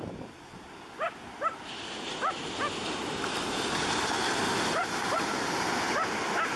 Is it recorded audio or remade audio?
recorded